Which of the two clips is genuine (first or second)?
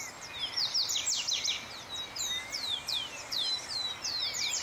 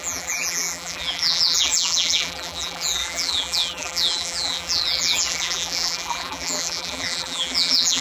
first